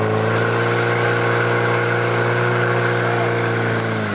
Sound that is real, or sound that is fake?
real